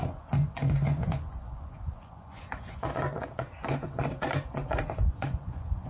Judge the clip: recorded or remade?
remade